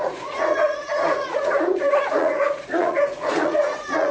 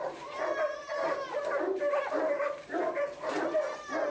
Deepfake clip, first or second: first